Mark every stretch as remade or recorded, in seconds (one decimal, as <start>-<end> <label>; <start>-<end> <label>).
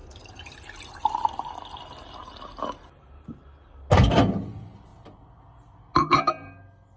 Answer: 0.0-7.0 recorded